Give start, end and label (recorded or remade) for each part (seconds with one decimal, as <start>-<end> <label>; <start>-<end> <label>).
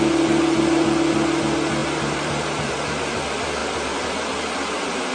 0.0-1.8 recorded; 1.8-3.2 remade; 3.2-3.6 recorded; 3.6-4.5 remade; 4.5-5.1 recorded